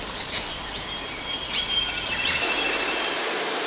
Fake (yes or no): no